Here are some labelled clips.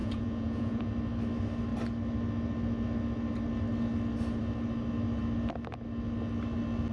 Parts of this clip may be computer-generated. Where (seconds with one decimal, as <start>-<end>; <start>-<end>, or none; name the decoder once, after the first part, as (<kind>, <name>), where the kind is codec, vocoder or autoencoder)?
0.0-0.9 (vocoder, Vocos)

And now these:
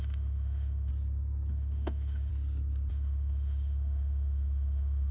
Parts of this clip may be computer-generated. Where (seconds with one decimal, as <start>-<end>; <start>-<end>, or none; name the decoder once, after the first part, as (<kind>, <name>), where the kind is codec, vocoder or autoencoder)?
0.0-0.9 (autoencoder, DAC-VAE); 1.5-2.3; 2.9-5.1

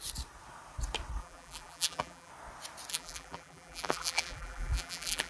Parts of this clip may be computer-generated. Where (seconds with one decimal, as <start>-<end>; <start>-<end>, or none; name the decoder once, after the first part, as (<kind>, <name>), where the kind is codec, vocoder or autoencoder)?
1.2-2.3 (vocoder, BigVGAN v2); 2.9-5.3

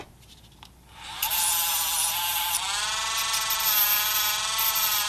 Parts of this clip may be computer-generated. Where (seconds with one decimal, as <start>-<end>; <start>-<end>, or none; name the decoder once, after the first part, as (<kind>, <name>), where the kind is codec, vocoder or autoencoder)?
0.0-1.5 (vocoder, BigVGAN v2); 4.6-5.1

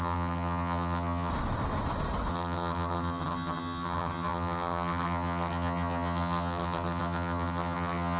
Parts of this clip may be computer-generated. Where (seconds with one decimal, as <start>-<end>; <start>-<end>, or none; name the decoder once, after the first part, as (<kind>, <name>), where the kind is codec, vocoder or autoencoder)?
0.0-1.3 (vocoder, HiFi-GAN); 2.3-8.2

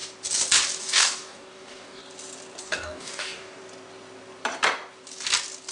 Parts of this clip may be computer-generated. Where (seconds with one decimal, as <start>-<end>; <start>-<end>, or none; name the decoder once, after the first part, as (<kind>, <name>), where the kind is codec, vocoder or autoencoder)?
0.8-2.0 (codec, DAC); 2.6-3.6